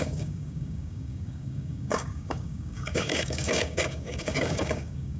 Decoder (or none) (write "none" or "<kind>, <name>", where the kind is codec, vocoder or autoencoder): codec, DAC